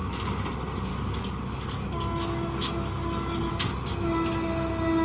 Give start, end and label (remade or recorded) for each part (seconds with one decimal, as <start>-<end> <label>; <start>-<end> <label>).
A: 0.0-0.9 recorded; 0.9-3.5 remade; 3.5-5.0 recorded